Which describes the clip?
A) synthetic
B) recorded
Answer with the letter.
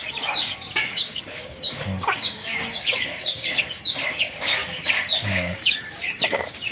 A